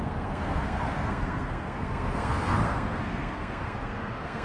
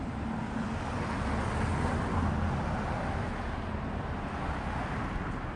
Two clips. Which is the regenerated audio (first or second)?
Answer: first